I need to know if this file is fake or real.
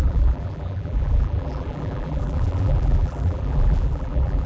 fake